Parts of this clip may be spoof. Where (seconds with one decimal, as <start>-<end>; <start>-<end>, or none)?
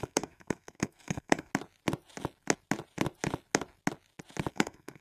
0.0-1.5; 4.5-5.0